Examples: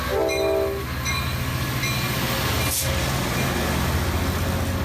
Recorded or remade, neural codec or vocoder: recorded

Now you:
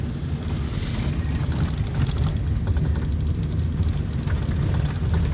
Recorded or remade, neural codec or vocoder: recorded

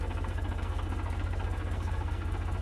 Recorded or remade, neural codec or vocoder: remade, codec, SNAC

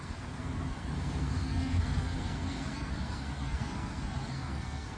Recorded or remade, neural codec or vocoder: remade, codec, SNAC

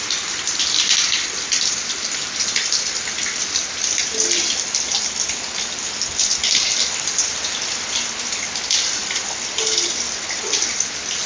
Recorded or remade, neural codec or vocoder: recorded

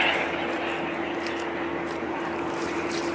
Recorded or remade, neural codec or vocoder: recorded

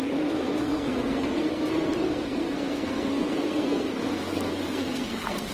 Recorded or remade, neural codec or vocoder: remade, codec, SNAC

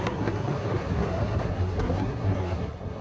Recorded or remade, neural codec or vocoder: remade, codec, SNAC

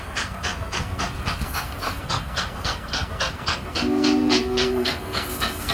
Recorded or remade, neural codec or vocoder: remade, codec, SNAC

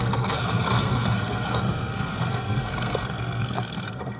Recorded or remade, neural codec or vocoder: remade, codec, SNAC